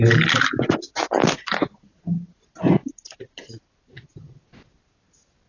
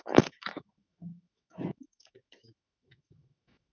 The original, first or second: first